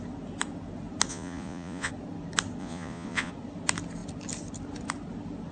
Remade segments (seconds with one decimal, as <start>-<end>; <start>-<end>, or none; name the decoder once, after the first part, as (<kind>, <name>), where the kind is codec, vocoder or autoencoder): 1.1-1.9 (vocoder, Vocos); 2.6-3.3